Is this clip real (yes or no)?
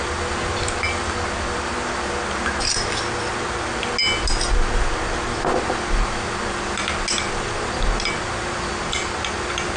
yes